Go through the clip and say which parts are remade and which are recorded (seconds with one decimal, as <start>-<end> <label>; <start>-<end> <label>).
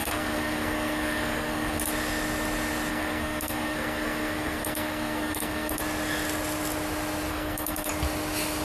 0.0-1.8 remade; 1.8-2.9 recorded; 2.9-5.8 remade; 5.8-7.3 recorded; 7.3-7.9 remade; 7.9-8.6 recorded